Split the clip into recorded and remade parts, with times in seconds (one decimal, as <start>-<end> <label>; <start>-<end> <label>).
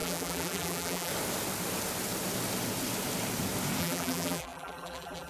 0.0-1.1 remade; 1.1-3.8 recorded; 3.8-5.3 remade